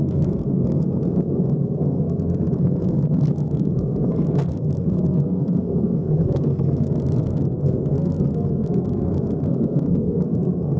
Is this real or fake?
fake